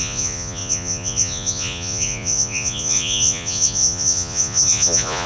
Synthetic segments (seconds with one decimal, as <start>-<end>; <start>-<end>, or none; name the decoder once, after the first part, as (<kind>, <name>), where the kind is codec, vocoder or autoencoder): 0.0-5.3 (vocoder, Vocos)